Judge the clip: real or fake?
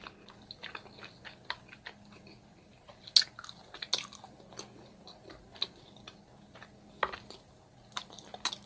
real